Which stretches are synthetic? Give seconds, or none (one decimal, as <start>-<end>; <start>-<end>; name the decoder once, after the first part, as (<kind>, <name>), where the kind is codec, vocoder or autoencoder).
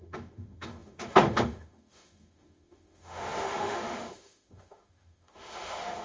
0.0-6.0 (autoencoder, DAC-VAE)